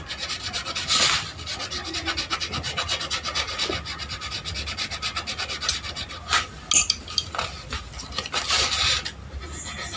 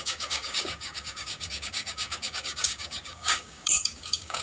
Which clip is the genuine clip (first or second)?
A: first